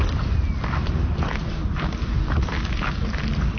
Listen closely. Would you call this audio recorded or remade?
recorded